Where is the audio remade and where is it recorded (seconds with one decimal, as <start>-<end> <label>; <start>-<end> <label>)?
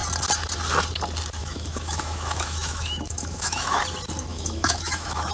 0.0-1.4 recorded; 1.4-3.8 remade; 3.8-4.3 recorded; 4.3-5.3 remade